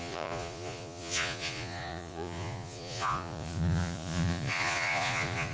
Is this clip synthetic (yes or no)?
yes